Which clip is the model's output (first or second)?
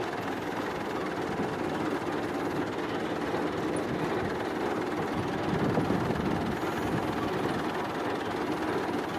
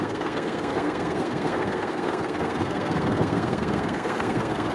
second